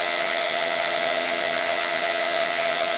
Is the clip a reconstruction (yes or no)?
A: yes